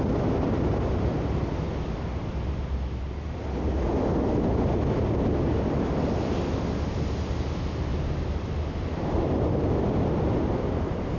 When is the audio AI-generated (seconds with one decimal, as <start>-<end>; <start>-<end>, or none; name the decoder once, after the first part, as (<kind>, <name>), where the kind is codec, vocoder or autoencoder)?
none